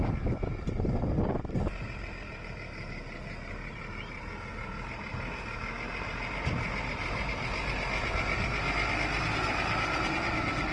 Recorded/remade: recorded